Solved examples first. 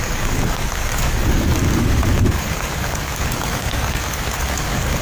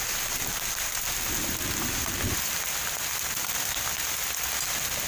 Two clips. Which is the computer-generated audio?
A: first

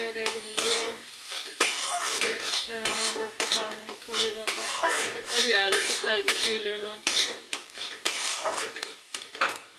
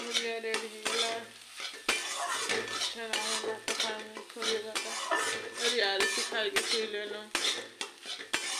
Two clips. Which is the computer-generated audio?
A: first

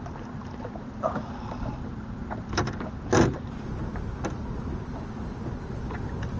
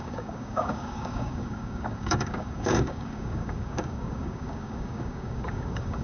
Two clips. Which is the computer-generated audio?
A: second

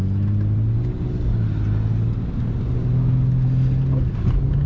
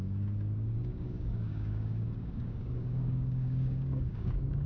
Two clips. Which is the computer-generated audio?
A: second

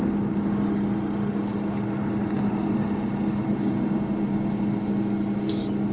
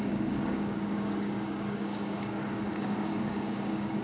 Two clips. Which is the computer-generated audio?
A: second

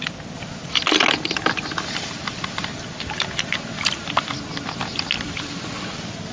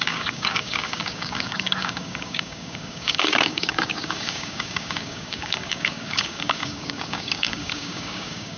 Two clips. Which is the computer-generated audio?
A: second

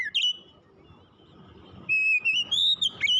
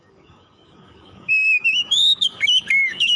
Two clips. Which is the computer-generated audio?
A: second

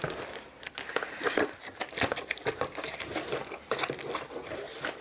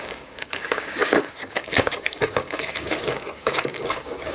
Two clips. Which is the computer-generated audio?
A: second